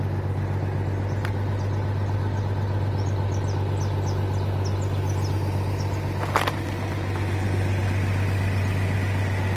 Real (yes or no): yes